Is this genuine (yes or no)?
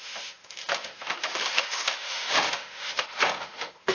no